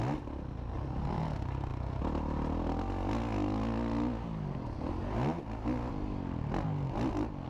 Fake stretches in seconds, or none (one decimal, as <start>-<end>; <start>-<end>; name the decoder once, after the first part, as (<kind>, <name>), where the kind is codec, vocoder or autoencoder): none